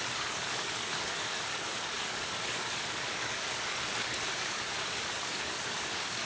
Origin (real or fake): fake